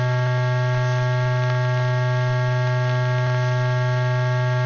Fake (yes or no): no